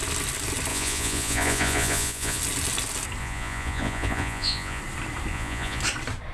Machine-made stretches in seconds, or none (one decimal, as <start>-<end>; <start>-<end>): 0.7-2.4; 3.2-4.8; 5.3-5.8